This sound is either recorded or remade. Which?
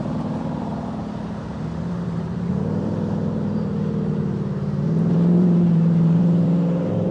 remade